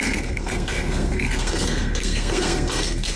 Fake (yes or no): yes